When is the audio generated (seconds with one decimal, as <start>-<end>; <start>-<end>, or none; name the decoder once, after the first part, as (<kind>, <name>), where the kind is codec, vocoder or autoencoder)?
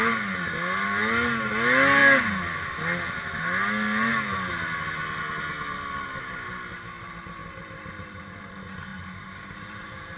7.4-8.5 (vocoder, BigVGAN v2); 8.9-10.2